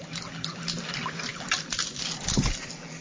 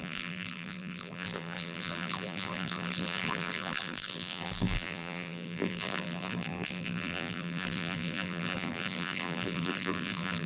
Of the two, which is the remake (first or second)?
second